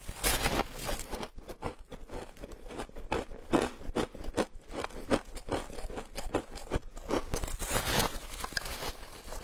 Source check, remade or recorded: recorded